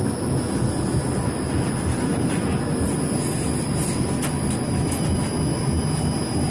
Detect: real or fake real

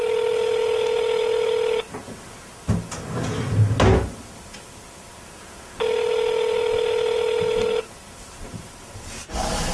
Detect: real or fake real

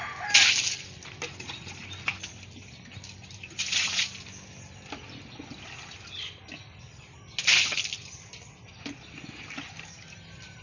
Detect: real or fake real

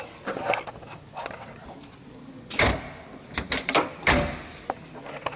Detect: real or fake real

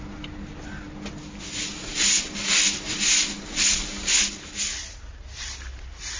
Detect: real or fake real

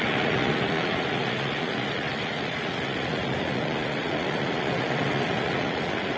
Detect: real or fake fake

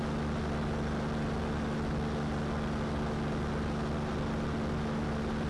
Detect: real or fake real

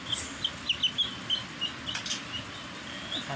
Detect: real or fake real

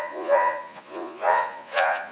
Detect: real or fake fake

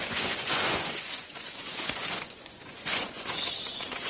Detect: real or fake fake